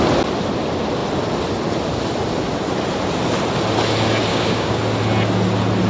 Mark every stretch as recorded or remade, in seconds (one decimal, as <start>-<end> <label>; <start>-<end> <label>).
0.0-4.3 recorded; 4.3-4.8 remade; 4.8-5.9 recorded